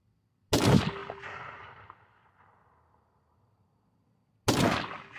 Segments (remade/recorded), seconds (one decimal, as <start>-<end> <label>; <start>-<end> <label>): 0.0-5.2 recorded